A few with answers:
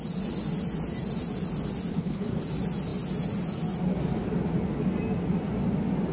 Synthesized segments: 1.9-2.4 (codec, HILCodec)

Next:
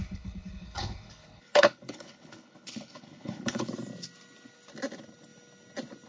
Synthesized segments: 0.0-3.7 (codec, HILCodec)

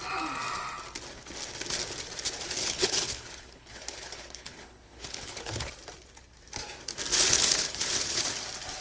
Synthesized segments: 2.6-5.7 (codec, HILCodec); 7.1-8.2

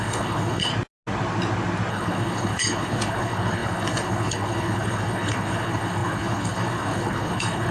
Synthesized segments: 0.0-0.7 (codec, HILCodec); 1.9-7.7

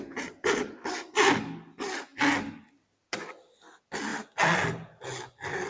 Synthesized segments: none